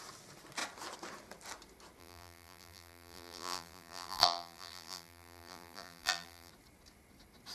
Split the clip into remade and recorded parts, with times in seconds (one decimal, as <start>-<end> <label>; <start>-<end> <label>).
0.0-2.0 recorded; 2.0-6.5 remade; 6.5-7.5 recorded